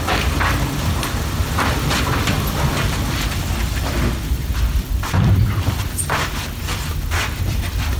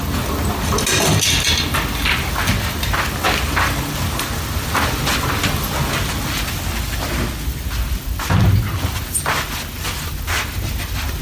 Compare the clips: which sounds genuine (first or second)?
second